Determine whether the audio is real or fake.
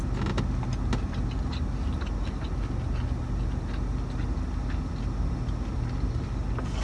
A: real